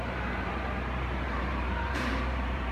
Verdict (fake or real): fake